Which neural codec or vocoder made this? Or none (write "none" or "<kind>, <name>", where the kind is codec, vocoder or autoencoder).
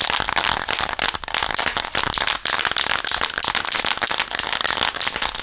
none